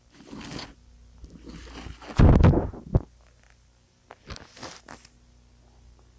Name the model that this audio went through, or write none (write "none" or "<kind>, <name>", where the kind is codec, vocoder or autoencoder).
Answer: none